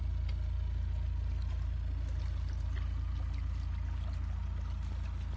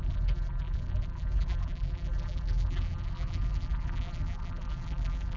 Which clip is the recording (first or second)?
first